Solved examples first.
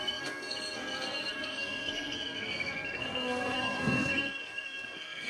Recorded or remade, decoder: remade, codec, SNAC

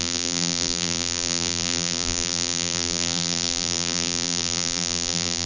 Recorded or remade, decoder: remade, vocoder, BigVGAN v2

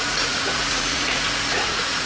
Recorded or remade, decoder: remade, vocoder, Vocos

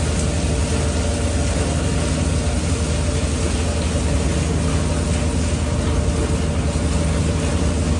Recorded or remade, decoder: recorded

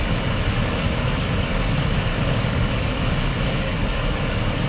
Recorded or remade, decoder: remade, codec, DAC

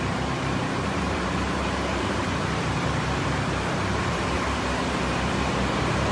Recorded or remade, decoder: remade, vocoder, BigVGAN v2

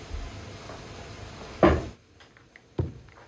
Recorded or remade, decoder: recorded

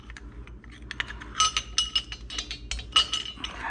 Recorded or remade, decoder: recorded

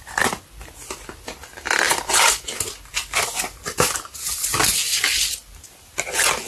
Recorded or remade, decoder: recorded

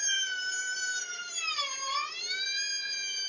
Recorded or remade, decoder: recorded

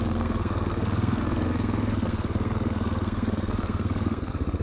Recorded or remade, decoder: remade, codec, SNAC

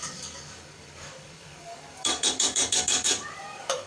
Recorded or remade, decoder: remade, codec, DAC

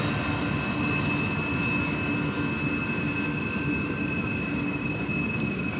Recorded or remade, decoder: recorded